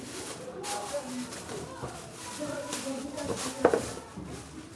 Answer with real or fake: real